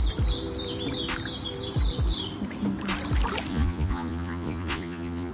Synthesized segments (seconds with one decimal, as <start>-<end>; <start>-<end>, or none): 3.5-5.3